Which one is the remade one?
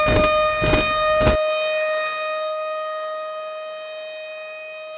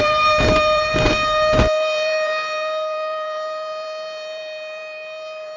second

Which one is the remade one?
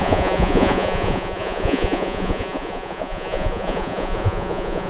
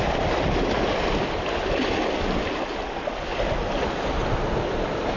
first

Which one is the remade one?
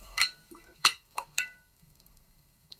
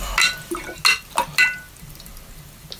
first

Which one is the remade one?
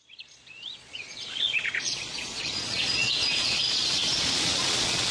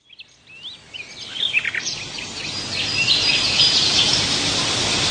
first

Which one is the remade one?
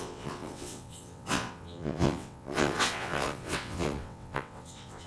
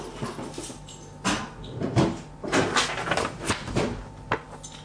first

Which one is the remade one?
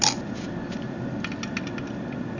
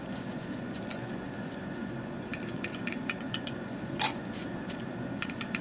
second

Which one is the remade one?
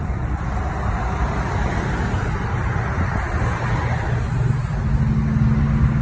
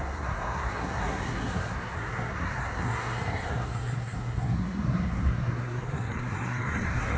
second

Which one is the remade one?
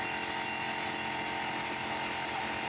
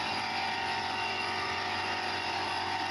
second